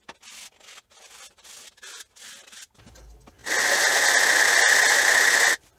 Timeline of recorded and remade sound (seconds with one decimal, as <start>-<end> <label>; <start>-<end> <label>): 0.0-5.8 recorded